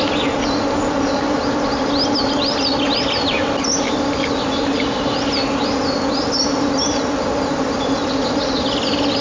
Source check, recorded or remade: recorded